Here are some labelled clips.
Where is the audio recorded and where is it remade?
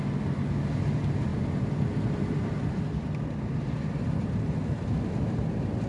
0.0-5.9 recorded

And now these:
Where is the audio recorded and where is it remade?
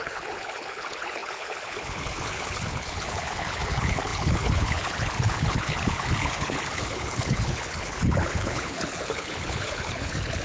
0.0-10.4 remade